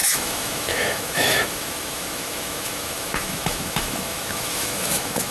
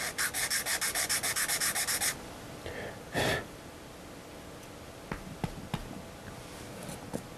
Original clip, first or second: second